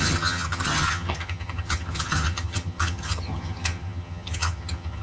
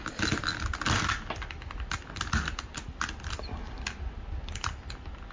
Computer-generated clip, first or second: first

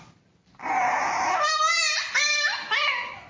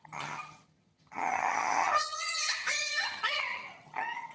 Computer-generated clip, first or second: second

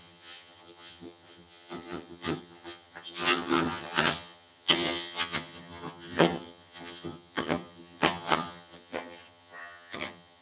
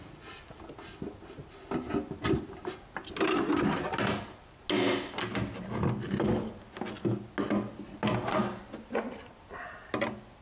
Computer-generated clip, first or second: first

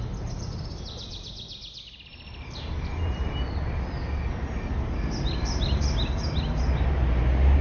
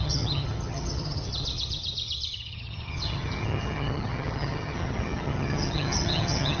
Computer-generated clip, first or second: second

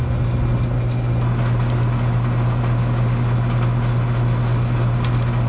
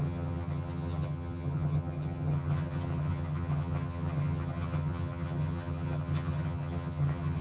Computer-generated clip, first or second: second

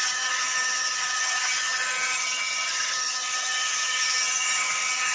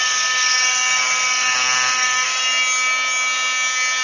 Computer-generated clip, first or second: first